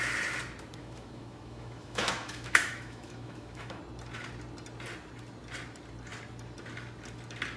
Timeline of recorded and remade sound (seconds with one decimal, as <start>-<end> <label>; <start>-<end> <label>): 0.0-0.8 recorded; 0.8-3.8 remade; 3.8-7.6 recorded